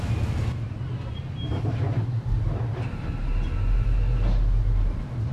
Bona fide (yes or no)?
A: yes